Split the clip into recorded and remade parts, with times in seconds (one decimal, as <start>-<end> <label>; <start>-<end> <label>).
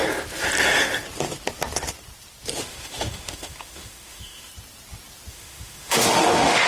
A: 0.0-2.6 recorded; 2.6-4.5 remade; 4.5-5.3 recorded; 5.3-6.7 remade